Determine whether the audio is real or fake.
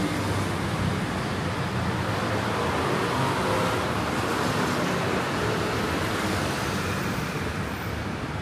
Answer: real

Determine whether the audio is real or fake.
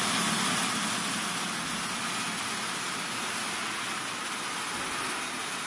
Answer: real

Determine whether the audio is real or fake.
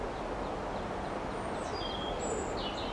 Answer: real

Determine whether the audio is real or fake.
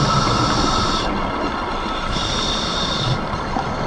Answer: real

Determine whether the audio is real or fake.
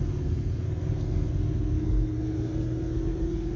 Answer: fake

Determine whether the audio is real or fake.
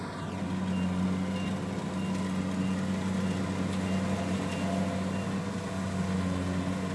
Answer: real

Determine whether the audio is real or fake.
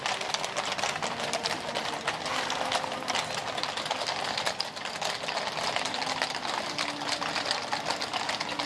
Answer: real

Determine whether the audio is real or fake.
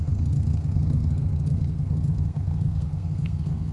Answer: fake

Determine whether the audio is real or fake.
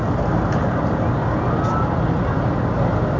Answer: real